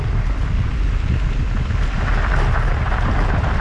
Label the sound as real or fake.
real